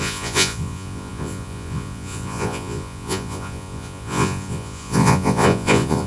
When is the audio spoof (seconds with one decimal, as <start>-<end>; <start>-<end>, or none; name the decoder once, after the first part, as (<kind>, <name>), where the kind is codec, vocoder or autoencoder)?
0.0-6.1 (vocoder, Vocos)